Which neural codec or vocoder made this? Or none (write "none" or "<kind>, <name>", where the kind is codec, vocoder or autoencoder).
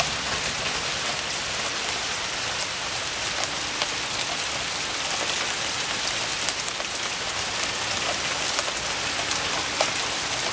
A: none